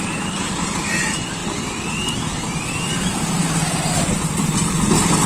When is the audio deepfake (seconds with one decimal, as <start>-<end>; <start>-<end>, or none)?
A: none